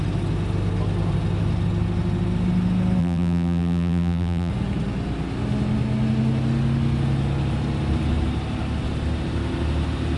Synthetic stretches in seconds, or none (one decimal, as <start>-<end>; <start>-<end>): 3.0-4.5